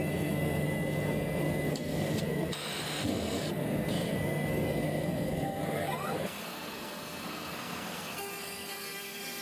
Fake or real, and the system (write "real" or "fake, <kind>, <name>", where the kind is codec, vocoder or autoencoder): fake, codec, SNAC